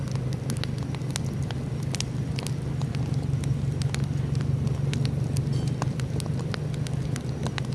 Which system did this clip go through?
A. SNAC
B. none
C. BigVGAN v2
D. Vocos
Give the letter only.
B